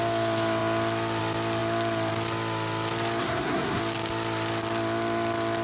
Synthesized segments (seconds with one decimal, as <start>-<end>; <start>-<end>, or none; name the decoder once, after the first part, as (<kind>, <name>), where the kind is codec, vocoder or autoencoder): 3.2-3.8 (codec, SNAC)